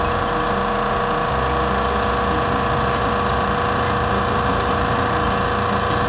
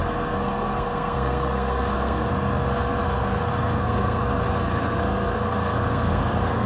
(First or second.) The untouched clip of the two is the first